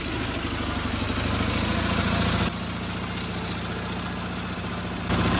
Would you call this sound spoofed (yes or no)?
no